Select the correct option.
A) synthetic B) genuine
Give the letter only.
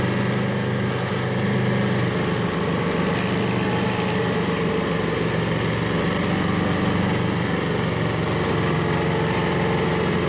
B